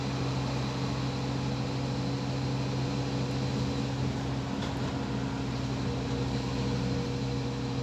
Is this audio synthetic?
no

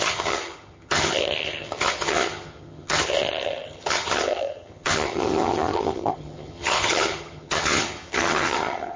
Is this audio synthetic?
yes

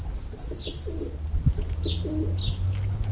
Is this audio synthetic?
no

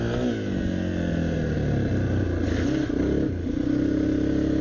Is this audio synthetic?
no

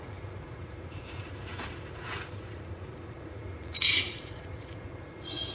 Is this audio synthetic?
yes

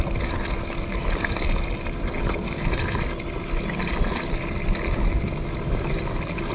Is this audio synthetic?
no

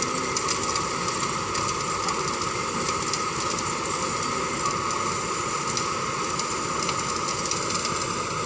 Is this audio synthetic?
no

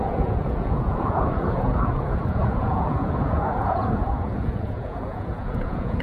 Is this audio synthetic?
yes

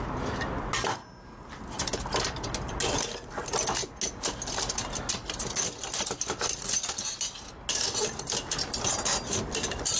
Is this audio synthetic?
no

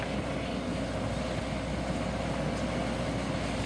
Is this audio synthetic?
no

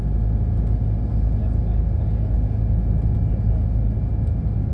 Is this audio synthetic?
no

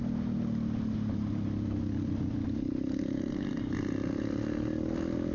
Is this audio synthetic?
no